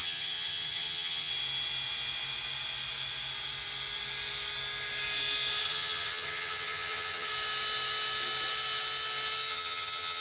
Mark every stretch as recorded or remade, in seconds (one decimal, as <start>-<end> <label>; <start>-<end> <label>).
0.0-1.3 remade; 1.3-5.6 recorded; 5.6-7.3 remade; 7.3-9.5 recorded; 9.5-10.2 remade